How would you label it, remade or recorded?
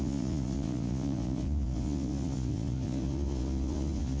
remade